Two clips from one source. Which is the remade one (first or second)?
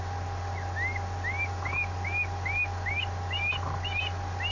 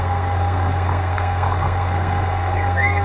second